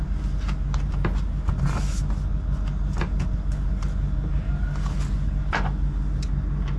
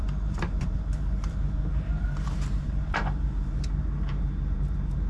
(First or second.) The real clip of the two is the first